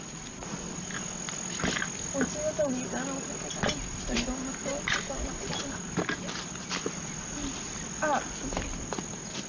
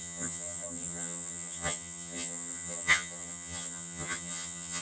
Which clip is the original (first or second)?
first